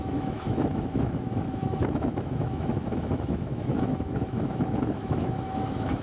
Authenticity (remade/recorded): remade